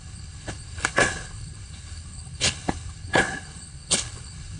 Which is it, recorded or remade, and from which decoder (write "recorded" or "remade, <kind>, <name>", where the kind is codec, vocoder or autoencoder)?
remade, codec, HILCodec